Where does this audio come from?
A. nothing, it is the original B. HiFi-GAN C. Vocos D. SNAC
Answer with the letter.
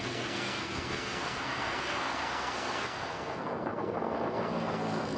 D